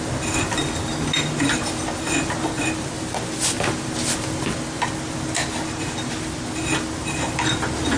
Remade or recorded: recorded